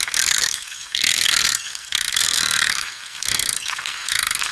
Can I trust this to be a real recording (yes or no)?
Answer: no